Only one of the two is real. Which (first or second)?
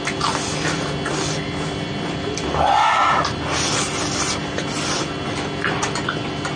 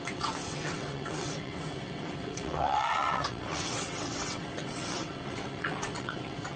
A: first